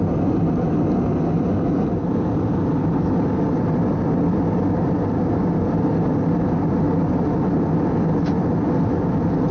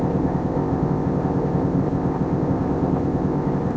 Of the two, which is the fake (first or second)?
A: second